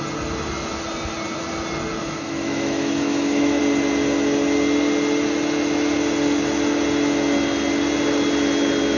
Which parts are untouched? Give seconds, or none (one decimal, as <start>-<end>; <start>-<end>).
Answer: 0.0-2.0; 3.6-9.0